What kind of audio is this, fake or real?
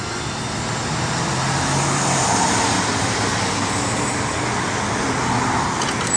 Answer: real